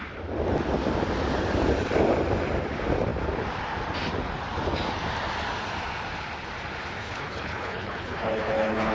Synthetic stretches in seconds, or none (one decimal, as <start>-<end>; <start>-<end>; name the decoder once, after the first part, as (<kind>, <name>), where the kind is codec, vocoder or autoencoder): 7.0-8.9 (codec, HILCodec)